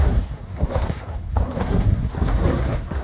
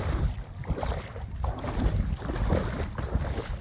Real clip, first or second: second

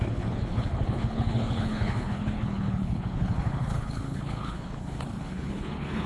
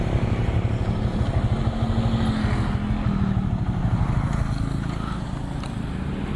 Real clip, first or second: second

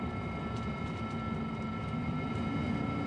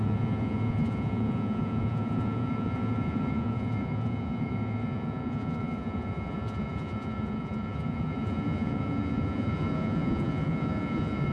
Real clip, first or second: first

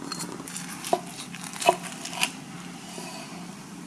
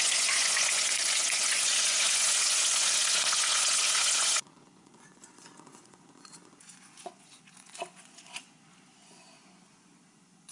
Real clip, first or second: first